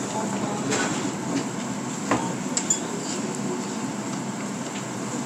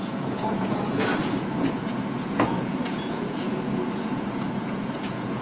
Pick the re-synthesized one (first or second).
second